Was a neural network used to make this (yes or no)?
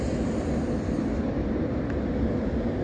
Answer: no